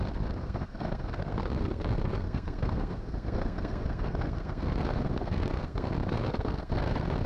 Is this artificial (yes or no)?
yes